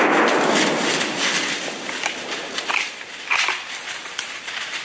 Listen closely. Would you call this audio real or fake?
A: real